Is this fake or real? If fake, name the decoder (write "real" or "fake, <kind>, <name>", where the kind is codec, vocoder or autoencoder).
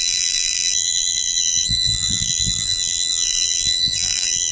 fake, vocoder, BigVGAN v2